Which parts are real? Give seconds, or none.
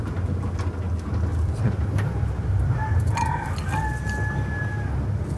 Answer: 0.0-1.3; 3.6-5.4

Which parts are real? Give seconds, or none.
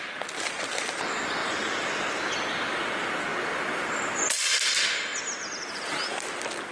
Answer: 0.0-6.7